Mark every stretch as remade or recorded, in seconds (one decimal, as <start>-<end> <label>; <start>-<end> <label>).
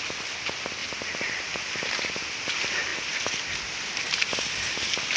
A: 0.0-5.2 recorded